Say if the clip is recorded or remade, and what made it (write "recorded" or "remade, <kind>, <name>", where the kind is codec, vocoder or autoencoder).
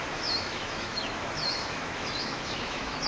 remade, autoencoder, DAC-VAE